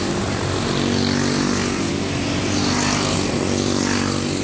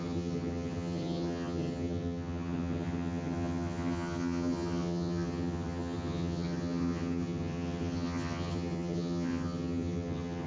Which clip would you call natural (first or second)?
first